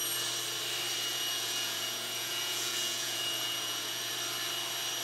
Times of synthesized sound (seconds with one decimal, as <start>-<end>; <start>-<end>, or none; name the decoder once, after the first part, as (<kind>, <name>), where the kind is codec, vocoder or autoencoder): 1.1-4.1 (vocoder, Vocos)